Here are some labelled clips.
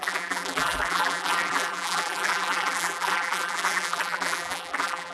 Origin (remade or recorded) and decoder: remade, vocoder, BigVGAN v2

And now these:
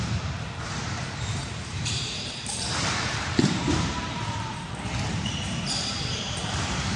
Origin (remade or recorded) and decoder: remade, vocoder, BigVGAN v2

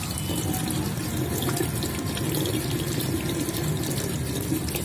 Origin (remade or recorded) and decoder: recorded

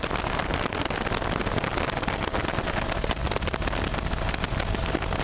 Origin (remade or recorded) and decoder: recorded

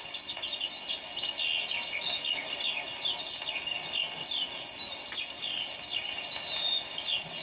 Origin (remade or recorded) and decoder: recorded